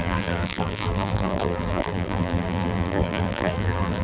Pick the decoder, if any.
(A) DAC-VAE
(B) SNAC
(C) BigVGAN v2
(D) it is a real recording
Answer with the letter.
C